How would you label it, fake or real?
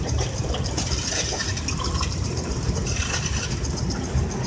fake